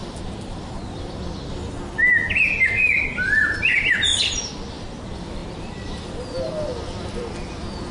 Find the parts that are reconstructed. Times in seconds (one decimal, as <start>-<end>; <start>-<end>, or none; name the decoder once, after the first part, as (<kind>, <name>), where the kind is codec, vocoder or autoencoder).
5.4-6.2 (vocoder, BigVGAN v2)